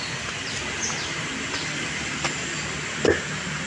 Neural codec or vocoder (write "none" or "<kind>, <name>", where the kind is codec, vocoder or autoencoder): none